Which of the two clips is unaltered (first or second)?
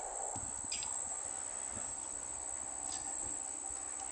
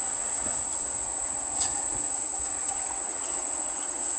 first